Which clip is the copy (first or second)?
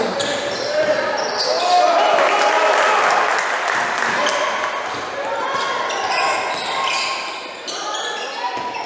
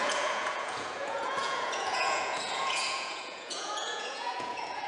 second